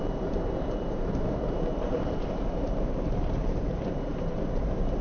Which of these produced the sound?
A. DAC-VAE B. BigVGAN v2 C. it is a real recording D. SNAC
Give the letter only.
B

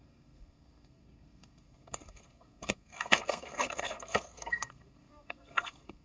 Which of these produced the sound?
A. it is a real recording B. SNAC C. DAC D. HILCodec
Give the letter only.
B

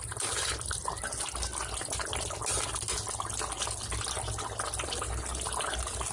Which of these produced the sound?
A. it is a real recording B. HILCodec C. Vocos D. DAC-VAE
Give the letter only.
A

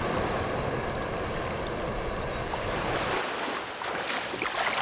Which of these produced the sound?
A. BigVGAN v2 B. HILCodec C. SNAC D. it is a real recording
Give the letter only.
D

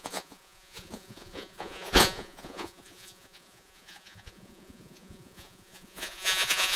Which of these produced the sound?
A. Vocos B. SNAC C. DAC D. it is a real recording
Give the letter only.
A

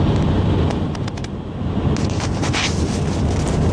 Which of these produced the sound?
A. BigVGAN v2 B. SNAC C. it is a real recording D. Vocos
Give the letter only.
C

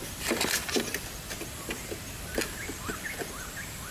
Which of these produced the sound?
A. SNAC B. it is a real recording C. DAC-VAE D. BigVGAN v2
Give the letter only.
D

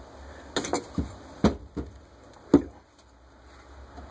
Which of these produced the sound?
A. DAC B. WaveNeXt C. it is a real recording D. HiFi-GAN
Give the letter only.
C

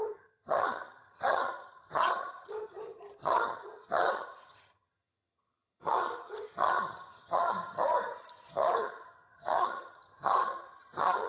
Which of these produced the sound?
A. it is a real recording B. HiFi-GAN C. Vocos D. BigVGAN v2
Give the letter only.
B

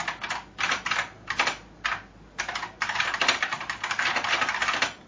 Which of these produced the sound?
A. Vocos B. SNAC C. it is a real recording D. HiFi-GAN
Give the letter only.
C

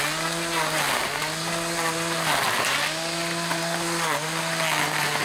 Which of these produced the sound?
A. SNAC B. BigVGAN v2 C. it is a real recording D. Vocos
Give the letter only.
C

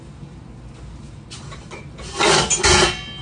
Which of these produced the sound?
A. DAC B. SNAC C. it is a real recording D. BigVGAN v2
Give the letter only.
C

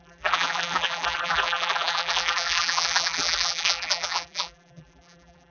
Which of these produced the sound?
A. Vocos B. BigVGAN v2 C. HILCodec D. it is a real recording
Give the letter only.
B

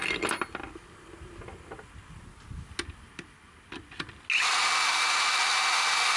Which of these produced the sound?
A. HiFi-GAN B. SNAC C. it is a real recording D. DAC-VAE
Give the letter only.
C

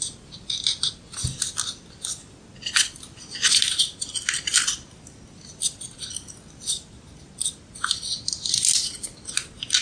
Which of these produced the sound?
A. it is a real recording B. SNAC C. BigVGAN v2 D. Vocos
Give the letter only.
A